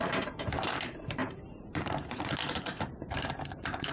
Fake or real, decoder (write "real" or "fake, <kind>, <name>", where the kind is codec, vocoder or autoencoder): fake, vocoder, BigVGAN v2